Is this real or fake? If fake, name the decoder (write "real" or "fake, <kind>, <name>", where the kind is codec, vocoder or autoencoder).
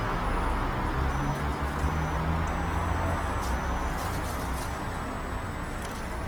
real